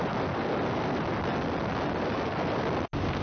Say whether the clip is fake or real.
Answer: real